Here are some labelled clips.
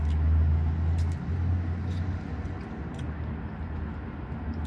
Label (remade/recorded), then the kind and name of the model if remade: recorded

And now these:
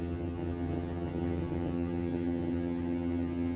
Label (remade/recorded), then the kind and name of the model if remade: remade, vocoder, HiFi-GAN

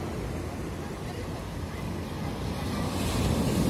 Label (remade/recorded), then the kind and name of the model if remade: recorded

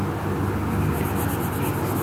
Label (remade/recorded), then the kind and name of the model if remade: recorded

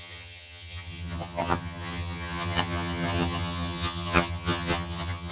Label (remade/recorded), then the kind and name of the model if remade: remade, vocoder, HiFi-GAN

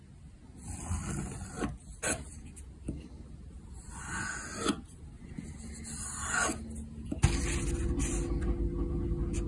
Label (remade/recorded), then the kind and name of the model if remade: recorded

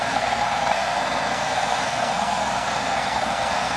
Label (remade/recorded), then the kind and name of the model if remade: remade, codec, SNAC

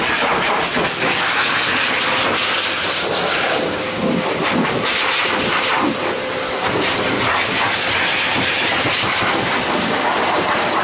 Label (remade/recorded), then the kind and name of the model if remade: remade, vocoder, BigVGAN v2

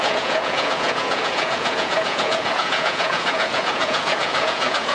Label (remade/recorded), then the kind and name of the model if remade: remade, vocoder, Vocos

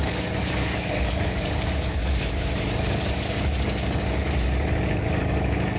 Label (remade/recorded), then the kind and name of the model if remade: remade, codec, DAC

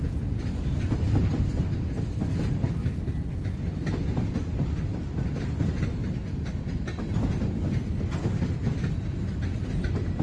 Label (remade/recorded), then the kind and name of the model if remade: recorded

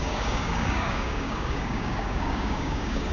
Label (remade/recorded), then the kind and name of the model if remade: remade, codec, DAC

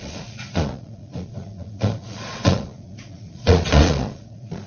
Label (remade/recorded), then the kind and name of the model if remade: remade, vocoder, Vocos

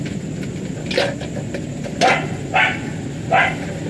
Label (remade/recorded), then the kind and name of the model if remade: recorded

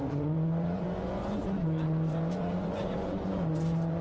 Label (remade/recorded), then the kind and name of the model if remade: remade, vocoder, Vocos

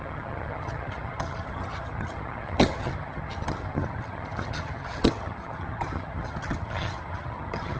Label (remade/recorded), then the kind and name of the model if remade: remade, vocoder, HiFi-GAN